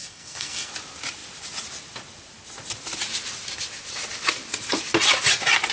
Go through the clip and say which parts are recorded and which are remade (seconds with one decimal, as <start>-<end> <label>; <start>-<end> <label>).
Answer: 0.0-0.7 remade; 0.7-5.7 recorded